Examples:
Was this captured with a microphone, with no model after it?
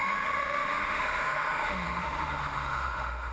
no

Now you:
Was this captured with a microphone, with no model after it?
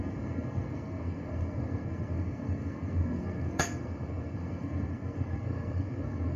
no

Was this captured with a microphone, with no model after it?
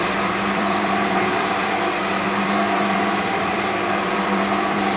no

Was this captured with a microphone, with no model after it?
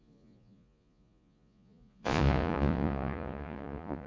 no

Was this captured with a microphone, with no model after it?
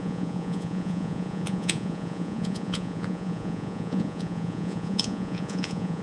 no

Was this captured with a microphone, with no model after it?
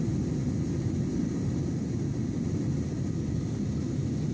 yes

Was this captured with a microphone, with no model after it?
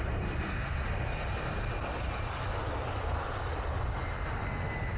yes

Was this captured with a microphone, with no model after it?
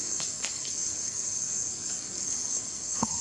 no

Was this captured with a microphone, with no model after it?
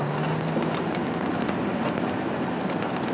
yes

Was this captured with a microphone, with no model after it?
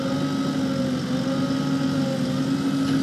yes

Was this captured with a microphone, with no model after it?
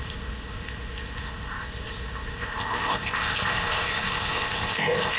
no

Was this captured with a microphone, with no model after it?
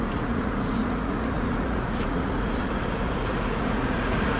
no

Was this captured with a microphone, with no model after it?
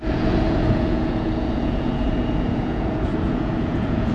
no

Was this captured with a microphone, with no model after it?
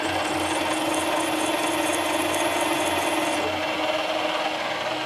yes